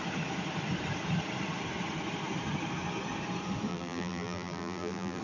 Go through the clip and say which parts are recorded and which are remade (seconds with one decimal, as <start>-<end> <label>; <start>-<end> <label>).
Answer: 0.0-3.7 recorded; 3.7-5.2 remade